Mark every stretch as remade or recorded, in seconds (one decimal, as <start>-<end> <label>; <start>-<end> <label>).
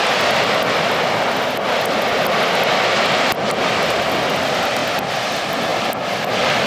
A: 0.0-5.7 recorded; 5.7-6.7 remade